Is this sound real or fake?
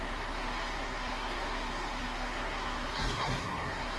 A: fake